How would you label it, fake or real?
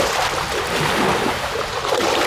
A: real